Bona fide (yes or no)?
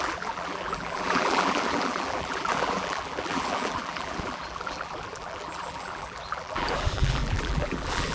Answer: no